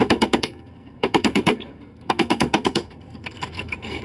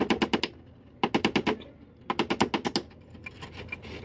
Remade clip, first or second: first